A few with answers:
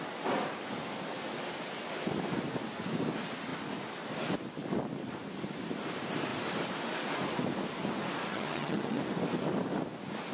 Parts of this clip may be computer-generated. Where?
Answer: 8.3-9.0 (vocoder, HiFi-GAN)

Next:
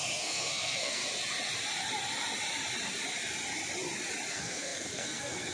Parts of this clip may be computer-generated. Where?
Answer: 0.0-1.0 (codec, SNAC); 4.3-5.5

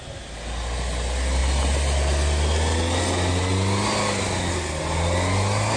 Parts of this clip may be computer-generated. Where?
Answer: none

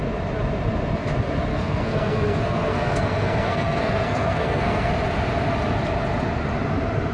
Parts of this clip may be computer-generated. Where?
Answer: 1.5-4.9 (codec, SNAC)

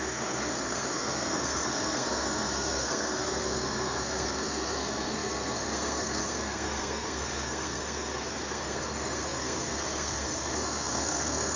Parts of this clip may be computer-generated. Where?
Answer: 0.0-11.6 (codec, SNAC)

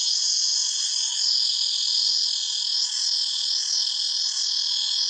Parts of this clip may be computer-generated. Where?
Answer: none

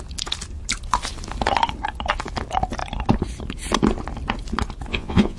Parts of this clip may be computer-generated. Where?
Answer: 4.9-5.4 (vocoder, Vocos)

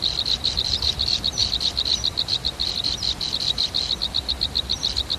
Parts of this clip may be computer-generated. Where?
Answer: none